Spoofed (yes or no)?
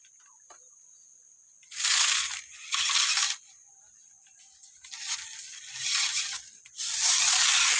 no